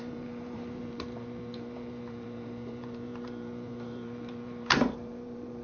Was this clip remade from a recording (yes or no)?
yes